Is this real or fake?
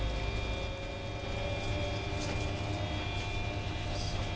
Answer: real